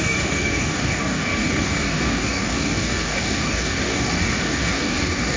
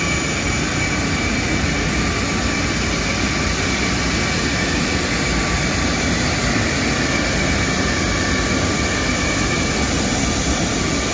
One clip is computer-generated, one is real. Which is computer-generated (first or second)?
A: first